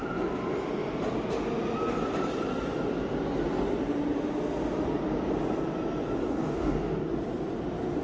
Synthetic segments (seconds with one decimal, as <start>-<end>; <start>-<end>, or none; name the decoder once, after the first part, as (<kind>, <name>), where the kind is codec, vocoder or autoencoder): 6.2-7.1 (codec, DAC)